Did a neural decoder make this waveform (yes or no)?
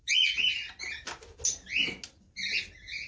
no